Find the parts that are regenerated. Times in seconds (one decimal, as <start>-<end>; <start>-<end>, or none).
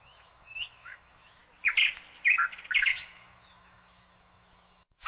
0.0-1.4; 2.8-5.1